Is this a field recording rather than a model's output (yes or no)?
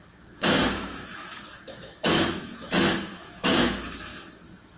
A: no